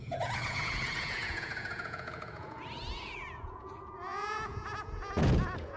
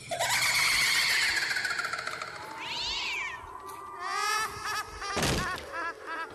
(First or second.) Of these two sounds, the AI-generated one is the first